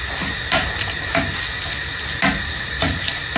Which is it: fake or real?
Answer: real